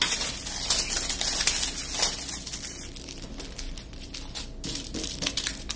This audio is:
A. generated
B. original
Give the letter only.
B